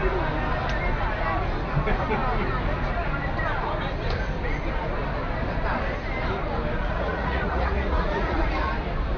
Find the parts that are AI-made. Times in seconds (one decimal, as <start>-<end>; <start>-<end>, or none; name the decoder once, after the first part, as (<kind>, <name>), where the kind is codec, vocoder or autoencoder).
6.8-8.7 (vocoder, Vocos)